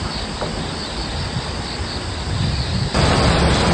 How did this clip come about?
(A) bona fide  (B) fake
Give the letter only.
A